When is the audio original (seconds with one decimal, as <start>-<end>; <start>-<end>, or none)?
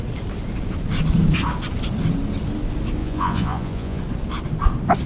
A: 0.0-3.0; 4.0-5.1